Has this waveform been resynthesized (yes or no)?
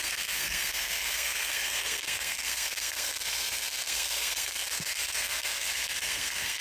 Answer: yes